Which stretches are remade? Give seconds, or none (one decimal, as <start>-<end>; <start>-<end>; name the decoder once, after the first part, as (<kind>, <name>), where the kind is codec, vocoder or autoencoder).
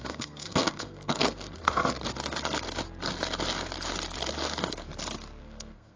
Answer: 0.0-1.8 (codec, SNAC); 5.4-6.0